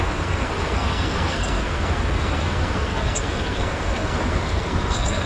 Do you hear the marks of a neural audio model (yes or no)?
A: yes